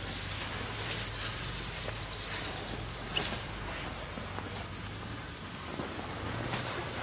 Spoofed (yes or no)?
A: no